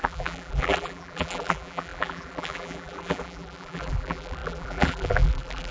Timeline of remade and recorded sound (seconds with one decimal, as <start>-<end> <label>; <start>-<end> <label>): 0.0-5.7 remade